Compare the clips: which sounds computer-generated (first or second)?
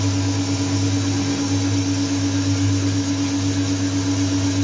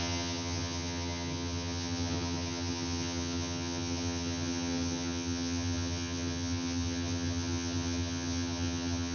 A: second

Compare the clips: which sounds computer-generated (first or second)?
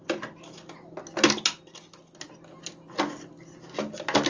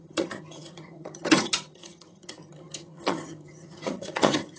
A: second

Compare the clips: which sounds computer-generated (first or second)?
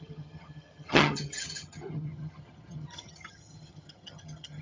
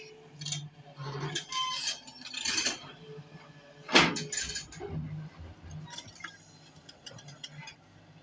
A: first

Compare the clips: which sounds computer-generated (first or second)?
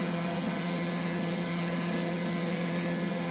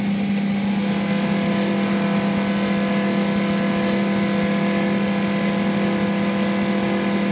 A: first